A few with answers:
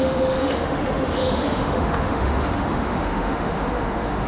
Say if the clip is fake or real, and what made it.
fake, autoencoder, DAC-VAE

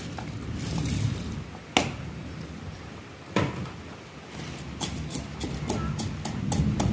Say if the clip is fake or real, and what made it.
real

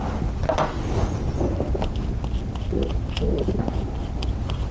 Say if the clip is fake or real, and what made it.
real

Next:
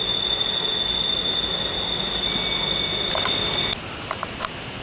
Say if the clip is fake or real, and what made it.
real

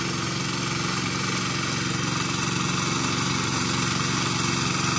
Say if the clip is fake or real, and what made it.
real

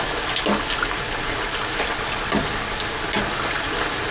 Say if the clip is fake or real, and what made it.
real